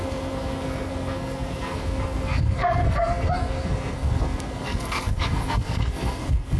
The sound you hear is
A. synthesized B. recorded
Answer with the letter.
A